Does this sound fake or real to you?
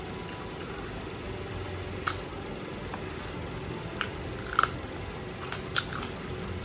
real